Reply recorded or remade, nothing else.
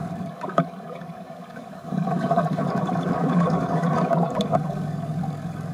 remade